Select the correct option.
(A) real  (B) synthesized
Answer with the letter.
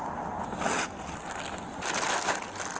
A